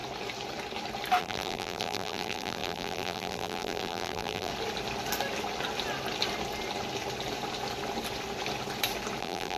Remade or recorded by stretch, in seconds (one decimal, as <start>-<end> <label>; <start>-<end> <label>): 0.0-1.2 recorded; 1.2-4.5 remade; 4.5-9.2 recorded; 9.2-9.6 remade